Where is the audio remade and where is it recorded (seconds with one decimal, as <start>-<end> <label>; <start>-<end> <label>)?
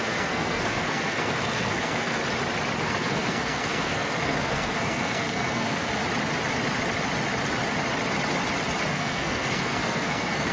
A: 0.0-2.2 remade; 2.2-2.8 recorded; 2.8-5.9 remade; 5.9-8.9 recorded; 8.9-10.5 remade